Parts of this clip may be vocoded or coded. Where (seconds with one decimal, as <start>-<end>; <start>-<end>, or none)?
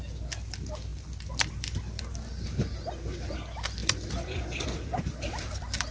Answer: 0.9-2.1; 3.8-5.9